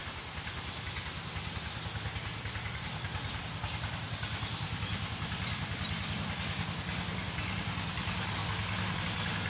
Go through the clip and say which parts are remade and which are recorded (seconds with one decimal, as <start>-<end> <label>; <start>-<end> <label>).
0.0-9.5 recorded